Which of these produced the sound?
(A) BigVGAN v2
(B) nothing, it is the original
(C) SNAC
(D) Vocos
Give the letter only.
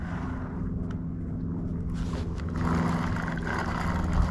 B